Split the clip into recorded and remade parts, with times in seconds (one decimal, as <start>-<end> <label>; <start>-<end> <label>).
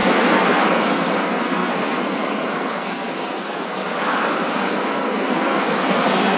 0.0-6.4 remade